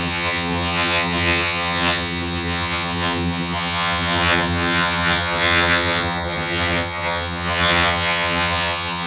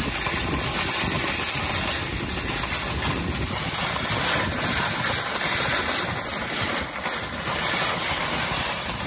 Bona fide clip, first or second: second